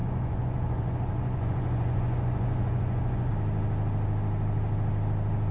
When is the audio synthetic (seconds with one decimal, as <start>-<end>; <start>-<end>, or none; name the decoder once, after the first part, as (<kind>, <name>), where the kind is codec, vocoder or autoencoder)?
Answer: 0.0-3.3 (vocoder, Vocos)